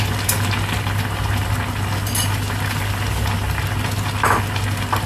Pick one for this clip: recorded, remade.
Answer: recorded